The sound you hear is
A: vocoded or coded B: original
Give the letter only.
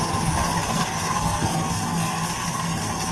A